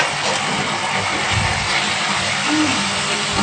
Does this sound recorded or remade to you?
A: remade